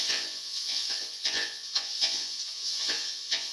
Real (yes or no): no